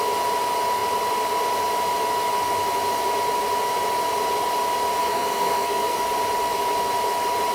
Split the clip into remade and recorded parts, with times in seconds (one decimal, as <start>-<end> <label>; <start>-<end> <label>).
0.0-5.0 recorded; 5.0-6.0 remade; 6.0-7.5 recorded